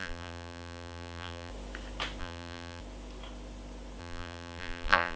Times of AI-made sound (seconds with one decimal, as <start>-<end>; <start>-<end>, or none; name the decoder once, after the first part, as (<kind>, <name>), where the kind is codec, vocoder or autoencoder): 0.0-1.5 (vocoder, BigVGAN v2); 2.2-2.8; 4.0-5.2